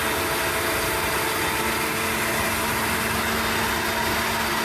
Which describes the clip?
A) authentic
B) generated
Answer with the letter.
A